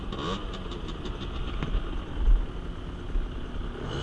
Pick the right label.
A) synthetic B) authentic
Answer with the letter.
B